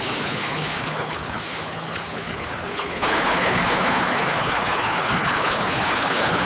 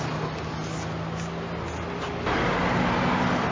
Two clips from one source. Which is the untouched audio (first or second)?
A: second